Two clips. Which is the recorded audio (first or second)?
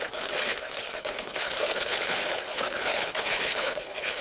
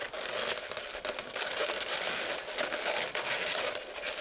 second